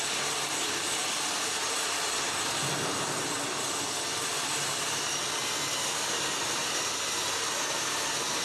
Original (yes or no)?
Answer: yes